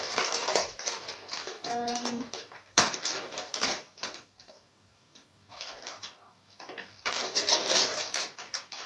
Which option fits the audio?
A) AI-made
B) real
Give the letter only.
A